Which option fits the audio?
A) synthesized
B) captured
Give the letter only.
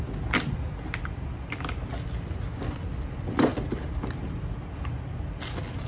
B